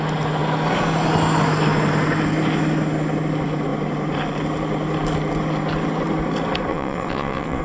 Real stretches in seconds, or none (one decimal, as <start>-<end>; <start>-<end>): 0.0-6.7